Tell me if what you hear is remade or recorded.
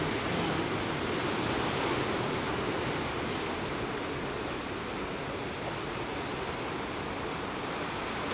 recorded